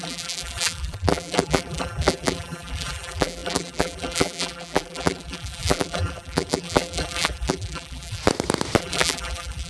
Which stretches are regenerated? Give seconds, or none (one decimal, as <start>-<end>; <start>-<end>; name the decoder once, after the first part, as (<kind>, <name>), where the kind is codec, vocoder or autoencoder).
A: 0.0-8.2 (vocoder, BigVGAN v2); 8.8-9.7